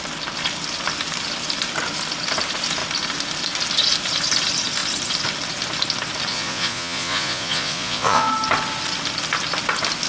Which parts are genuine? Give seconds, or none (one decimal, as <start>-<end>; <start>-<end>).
0.0-6.3; 8.3-10.1

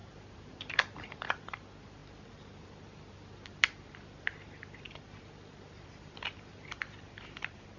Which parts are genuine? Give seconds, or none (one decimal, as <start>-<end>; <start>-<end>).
none

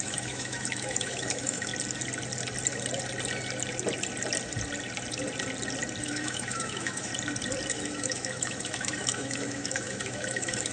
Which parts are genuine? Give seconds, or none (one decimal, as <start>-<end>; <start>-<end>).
1.7-6.0; 7.1-7.7

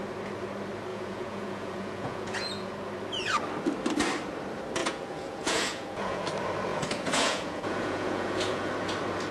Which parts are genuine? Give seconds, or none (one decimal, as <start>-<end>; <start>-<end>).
0.0-0.9; 2.7-4.8; 6.2-6.7; 8.7-9.3

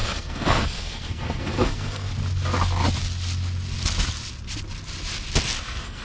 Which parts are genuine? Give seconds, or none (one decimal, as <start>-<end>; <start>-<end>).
2.1-5.6